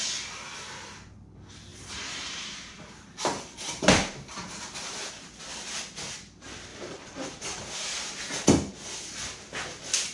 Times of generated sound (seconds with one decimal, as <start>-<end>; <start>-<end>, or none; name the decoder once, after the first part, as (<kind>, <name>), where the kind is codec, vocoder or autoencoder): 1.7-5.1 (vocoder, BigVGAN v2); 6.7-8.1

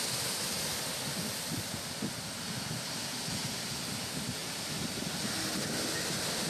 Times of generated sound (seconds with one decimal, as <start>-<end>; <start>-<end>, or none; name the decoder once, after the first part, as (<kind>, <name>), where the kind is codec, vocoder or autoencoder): 4.4-5.1 (vocoder, BigVGAN v2)

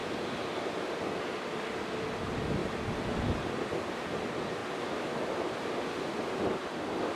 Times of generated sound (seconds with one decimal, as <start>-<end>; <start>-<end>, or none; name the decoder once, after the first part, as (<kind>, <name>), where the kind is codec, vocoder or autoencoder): 1.2-2.6 (vocoder, BigVGAN v2); 3.4-4.6

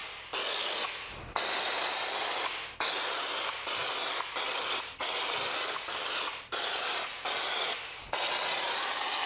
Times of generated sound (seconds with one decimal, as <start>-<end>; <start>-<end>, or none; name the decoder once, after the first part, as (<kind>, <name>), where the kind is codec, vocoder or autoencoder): 3.4-3.8 (vocoder, BigVGAN v2); 8.6-9.3

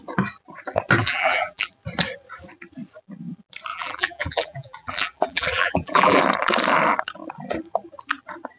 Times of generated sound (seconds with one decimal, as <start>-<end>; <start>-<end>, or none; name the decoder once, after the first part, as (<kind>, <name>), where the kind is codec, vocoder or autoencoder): 1.0-1.7 (vocoder, BigVGAN v2); 3.7-6.2